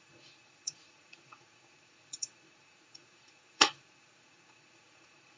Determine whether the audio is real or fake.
fake